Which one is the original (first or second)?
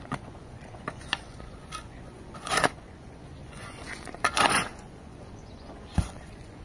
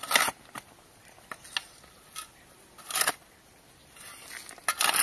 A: second